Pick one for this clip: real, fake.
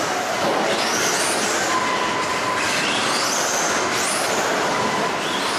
real